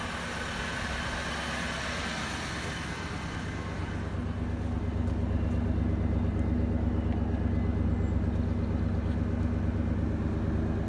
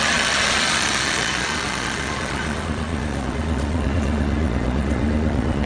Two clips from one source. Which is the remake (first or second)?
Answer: second